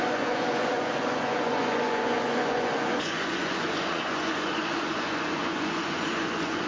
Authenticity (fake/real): fake